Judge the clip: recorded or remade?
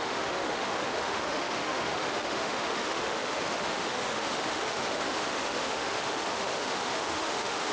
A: remade